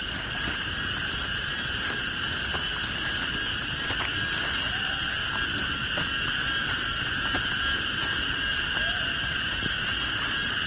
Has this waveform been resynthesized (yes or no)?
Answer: no